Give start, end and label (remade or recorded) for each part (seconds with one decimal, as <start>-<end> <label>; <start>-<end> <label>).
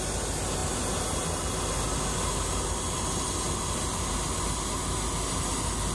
0.0-5.9 recorded